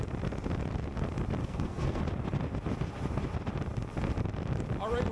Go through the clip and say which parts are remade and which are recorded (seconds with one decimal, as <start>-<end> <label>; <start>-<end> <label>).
0.0-1.4 recorded; 1.4-2.0 remade; 2.0-5.1 recorded